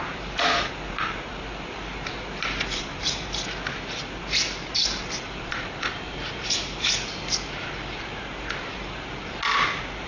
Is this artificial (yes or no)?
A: no